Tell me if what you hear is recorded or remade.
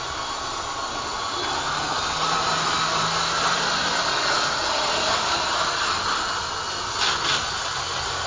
recorded